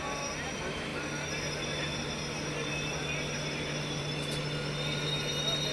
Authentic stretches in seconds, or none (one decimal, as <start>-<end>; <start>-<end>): 0.0-5.7